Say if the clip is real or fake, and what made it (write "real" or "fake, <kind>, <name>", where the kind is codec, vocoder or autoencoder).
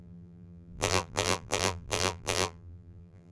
fake, vocoder, BigVGAN v2